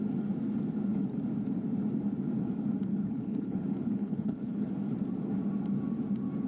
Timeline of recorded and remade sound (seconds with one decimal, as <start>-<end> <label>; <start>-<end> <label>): 0.0-2.9 recorded; 2.9-3.6 remade; 3.6-4.0 recorded; 4.0-4.7 remade; 4.7-6.5 recorded